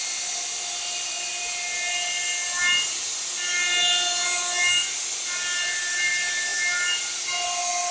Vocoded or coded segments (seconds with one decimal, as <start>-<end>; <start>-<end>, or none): none

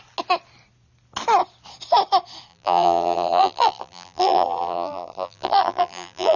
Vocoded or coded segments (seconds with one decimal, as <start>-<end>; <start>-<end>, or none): 2.5-6.4

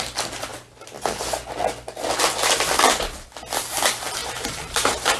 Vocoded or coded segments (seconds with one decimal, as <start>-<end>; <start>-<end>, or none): 4.2-5.2